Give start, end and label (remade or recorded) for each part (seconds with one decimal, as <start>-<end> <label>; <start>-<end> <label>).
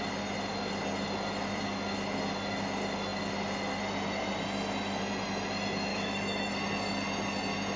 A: 0.0-5.9 recorded; 5.9-6.5 remade; 6.5-7.8 recorded